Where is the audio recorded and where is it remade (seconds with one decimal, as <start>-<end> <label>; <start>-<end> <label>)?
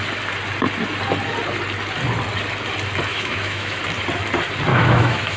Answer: 0.0-3.1 recorded; 3.1-3.8 remade; 3.8-4.7 recorded; 4.7-5.4 remade